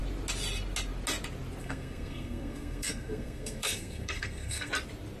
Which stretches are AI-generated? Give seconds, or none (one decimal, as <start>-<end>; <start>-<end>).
1.6-4.7